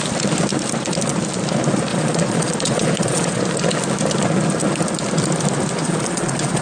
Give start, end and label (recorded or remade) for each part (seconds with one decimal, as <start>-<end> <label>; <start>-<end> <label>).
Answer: 0.0-1.9 recorded; 1.9-3.4 remade; 3.4-5.8 recorded; 5.8-6.6 remade